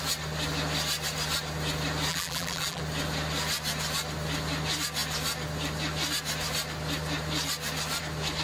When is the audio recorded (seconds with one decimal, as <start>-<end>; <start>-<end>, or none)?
0.0-2.1; 2.8-8.4